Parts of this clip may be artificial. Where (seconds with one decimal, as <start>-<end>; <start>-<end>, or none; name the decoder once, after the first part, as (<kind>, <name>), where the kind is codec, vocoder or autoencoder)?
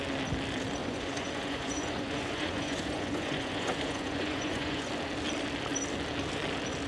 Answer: 0.8-4.9 (vocoder, Vocos)